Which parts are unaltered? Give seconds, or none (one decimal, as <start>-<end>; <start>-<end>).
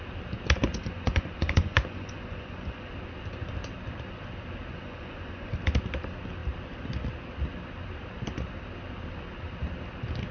0.0-0.7; 2.9-4.7; 5.5-10.3